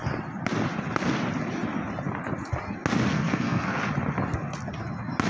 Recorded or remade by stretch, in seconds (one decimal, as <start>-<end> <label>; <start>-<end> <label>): 0.0-3.1 recorded; 3.1-3.8 remade; 3.8-5.3 recorded